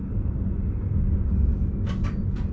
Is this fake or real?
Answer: real